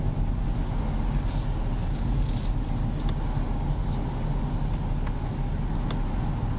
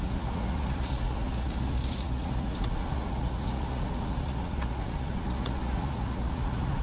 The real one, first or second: first